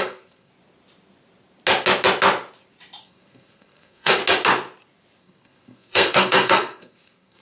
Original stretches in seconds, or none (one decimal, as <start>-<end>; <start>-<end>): 0.5-3.0; 4.2-5.2